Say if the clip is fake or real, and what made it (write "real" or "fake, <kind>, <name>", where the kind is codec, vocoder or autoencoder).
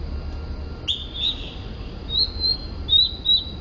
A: real